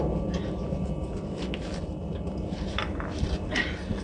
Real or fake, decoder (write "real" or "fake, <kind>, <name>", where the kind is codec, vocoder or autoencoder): real